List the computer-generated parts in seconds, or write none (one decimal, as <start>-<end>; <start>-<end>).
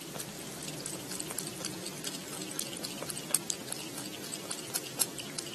none